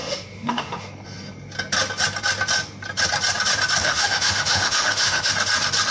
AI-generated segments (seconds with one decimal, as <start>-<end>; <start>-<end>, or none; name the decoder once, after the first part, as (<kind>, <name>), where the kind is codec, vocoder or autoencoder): 0.0-0.9 (autoencoder, DAC-VAE); 3.8-5.3